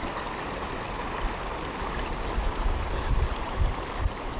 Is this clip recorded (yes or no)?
yes